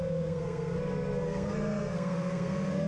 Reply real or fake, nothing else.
fake